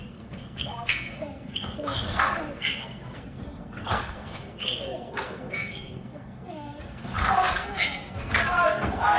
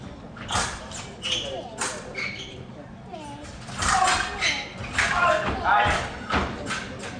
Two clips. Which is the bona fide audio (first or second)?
second